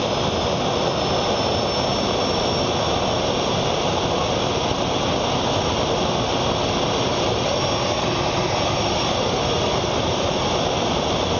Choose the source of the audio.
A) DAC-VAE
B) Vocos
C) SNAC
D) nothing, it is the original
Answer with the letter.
D